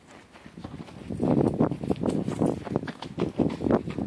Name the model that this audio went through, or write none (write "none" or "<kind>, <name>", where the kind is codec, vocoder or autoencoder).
none